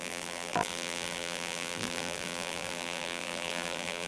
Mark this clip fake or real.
fake